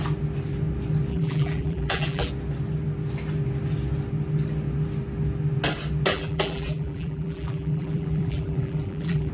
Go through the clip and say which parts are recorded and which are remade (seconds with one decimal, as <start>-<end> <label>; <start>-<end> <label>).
0.0-1.1 recorded; 1.1-2.3 remade; 2.3-6.1 recorded; 6.1-9.3 remade